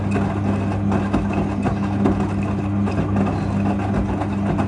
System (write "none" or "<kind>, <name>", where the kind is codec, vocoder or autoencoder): none